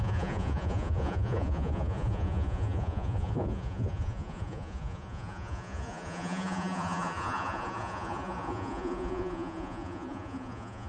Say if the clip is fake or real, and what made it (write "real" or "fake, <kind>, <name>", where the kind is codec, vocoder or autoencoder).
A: fake, vocoder, Vocos